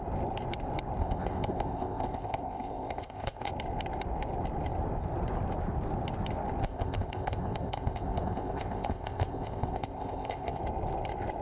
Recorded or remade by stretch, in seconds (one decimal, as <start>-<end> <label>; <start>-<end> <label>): 0.0-1.0 recorded; 1.0-3.5 remade; 3.5-6.6 recorded; 6.6-10.6 remade; 10.6-11.4 recorded